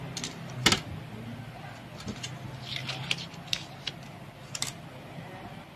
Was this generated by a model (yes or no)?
no